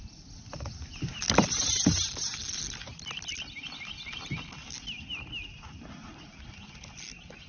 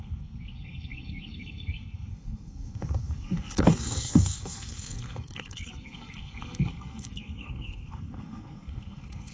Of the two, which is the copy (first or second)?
second